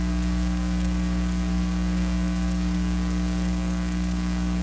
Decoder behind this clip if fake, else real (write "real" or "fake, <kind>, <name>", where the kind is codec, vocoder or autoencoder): fake, codec, DAC